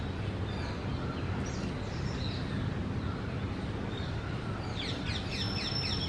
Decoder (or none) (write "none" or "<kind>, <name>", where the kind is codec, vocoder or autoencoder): none